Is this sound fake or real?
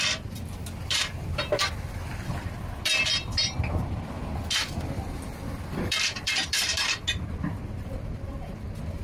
fake